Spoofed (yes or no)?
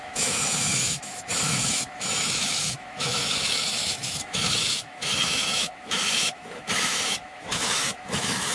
yes